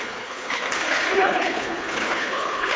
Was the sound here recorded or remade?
remade